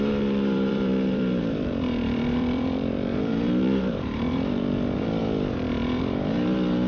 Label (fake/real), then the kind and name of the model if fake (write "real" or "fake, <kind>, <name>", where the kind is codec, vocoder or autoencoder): fake, vocoder, BigVGAN v2